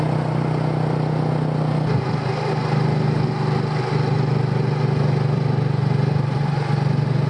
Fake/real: real